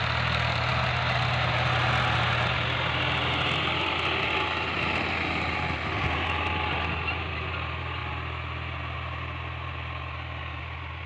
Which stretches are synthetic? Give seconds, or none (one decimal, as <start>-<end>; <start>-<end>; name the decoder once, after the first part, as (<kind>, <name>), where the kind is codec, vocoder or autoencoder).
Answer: none